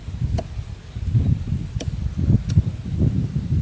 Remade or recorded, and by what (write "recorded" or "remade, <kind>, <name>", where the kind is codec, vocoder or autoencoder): recorded